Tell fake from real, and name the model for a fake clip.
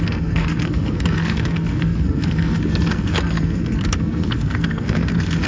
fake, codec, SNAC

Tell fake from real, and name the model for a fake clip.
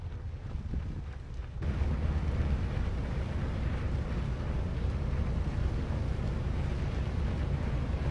real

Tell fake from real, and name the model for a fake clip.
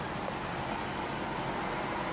real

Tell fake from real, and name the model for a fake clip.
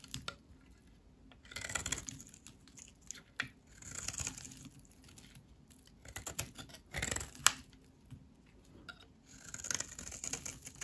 real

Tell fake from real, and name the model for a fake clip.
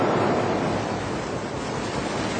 real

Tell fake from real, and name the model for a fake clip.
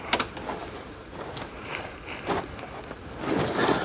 real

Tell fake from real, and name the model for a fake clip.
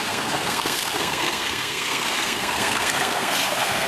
fake, codec, SNAC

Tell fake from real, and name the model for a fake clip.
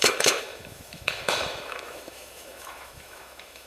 fake, autoencoder, DAC-VAE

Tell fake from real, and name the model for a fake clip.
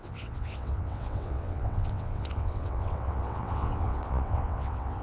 fake, vocoder, WaveNeXt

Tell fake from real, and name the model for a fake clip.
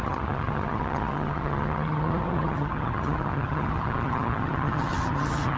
fake, vocoder, HiFi-GAN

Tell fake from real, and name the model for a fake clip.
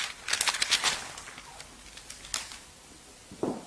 real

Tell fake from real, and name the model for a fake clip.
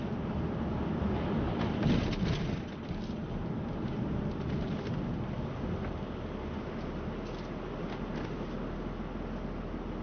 real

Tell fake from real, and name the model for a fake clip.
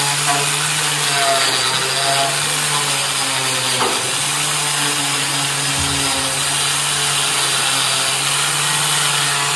real